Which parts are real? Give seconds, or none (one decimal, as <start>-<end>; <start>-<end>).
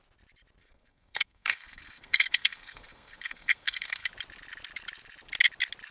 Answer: 0.0-0.6; 4.1-5.9